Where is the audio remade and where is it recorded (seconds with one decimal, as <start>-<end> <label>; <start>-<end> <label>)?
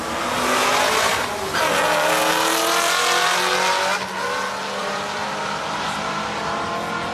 0.0-4.8 recorded; 4.8-6.6 remade; 6.6-7.1 recorded